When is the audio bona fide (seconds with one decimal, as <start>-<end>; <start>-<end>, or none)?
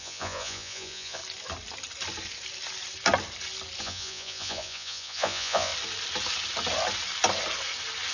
1.2-3.8; 5.7-8.1